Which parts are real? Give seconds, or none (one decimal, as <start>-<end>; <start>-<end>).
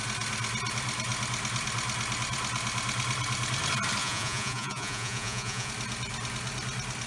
0.0-4.0; 5.7-7.1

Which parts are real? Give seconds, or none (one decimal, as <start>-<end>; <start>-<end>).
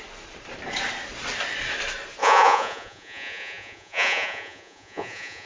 0.0-2.2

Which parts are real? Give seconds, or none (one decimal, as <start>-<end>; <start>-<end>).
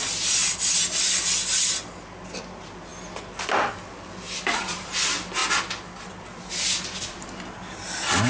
0.0-8.3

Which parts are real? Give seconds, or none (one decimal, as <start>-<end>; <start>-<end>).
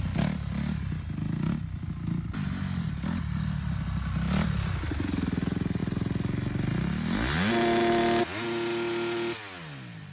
0.0-10.1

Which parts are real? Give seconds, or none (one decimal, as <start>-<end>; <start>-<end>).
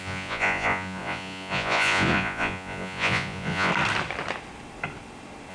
3.7-5.5